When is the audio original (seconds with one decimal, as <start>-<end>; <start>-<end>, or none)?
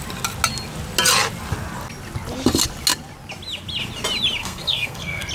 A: 0.0-4.4